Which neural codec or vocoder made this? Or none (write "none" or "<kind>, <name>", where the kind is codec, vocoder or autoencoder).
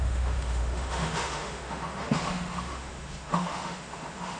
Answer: autoencoder, DAC-VAE